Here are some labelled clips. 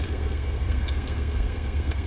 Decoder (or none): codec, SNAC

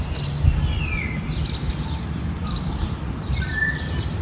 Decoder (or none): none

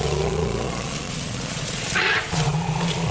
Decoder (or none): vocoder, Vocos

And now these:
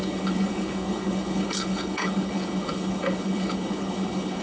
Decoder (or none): codec, HILCodec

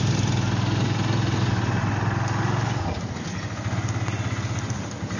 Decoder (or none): none